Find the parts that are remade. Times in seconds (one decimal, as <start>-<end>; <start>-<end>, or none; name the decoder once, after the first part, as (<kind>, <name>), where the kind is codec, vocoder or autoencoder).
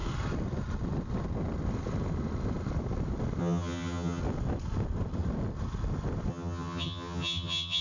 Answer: 3.4-4.2 (vocoder, HiFi-GAN); 6.3-7.8